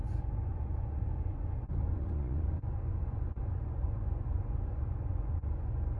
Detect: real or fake fake